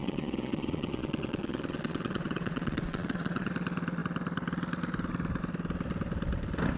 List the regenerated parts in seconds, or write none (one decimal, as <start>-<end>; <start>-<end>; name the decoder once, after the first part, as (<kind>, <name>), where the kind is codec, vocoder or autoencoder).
0.0-3.5 (vocoder, Vocos)